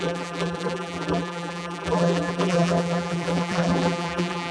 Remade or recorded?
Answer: remade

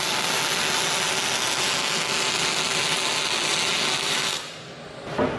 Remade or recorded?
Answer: recorded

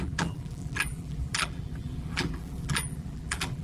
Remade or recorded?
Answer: remade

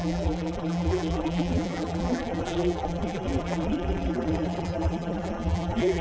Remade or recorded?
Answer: remade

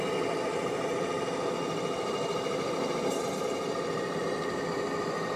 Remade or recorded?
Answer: recorded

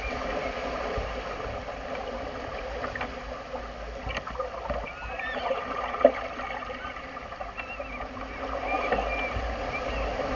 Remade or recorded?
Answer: recorded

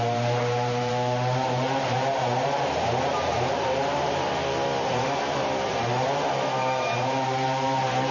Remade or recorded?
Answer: remade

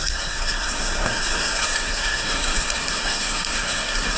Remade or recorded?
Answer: remade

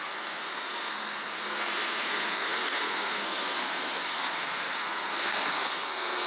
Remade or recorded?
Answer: remade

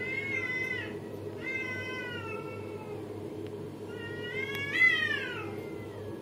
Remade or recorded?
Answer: recorded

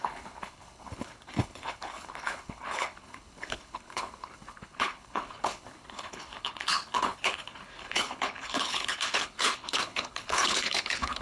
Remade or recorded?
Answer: remade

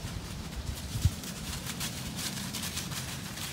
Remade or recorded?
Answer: remade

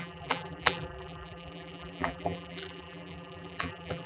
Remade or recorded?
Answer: remade